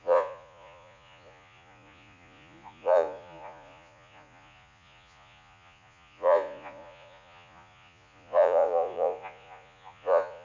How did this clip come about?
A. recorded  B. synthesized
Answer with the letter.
B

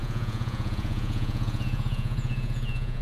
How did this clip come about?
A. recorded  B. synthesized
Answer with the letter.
B